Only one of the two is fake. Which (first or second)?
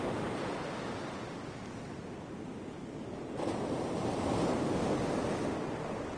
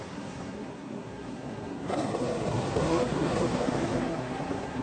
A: second